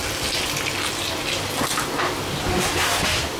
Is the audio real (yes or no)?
yes